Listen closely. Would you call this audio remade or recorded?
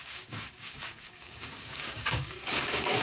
remade